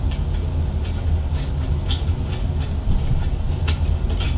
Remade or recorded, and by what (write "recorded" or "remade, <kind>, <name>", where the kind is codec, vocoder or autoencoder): recorded